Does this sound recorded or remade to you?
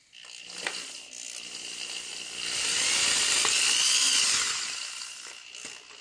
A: recorded